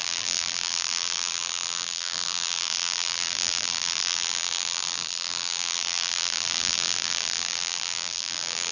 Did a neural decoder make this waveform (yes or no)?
yes